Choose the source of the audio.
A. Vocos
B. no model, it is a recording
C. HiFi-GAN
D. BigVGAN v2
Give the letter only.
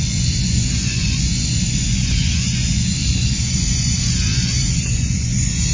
A